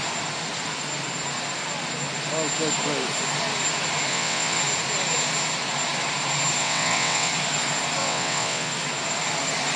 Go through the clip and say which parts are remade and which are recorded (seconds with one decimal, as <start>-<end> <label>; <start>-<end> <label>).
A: 0.0-4.1 recorded; 4.1-4.6 remade; 4.6-6.6 recorded; 6.6-7.3 remade; 7.3-8.0 recorded; 8.0-8.7 remade; 8.7-9.8 recorded